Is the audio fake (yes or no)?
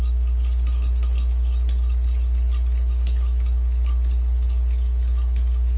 no